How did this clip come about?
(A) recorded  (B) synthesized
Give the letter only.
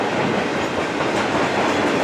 A